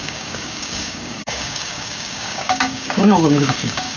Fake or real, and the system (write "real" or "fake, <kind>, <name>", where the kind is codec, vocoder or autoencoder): fake, codec, DAC